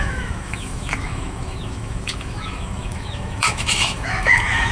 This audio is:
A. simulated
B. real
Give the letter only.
A